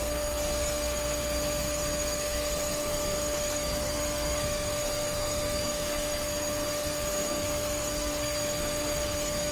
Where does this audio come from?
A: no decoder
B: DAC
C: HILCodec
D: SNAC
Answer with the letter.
D